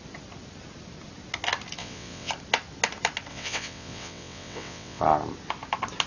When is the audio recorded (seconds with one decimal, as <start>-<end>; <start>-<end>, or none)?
0.0-1.8; 2.3-3.3; 5.0-6.1